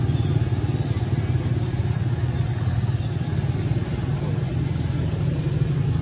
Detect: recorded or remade recorded